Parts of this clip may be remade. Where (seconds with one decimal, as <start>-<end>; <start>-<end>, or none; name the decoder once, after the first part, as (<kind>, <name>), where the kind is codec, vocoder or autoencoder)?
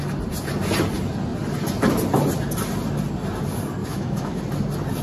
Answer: 3.8-4.4 (autoencoder, DAC-VAE)